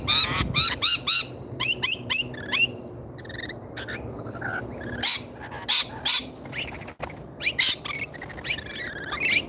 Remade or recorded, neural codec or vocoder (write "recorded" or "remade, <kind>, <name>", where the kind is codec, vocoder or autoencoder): recorded